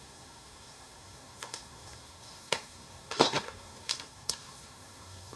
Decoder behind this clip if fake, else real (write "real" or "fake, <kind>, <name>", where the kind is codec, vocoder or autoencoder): fake, codec, SNAC